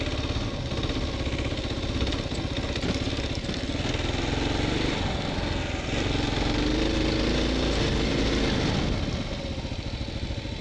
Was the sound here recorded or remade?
recorded